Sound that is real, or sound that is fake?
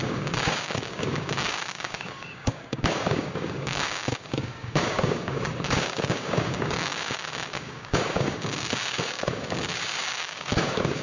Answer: fake